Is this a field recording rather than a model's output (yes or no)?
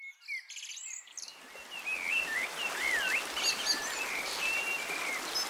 yes